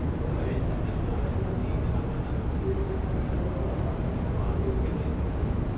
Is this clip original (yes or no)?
yes